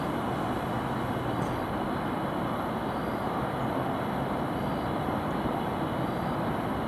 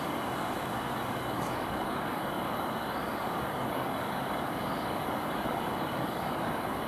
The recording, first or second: first